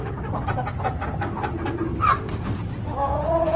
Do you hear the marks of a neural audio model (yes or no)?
no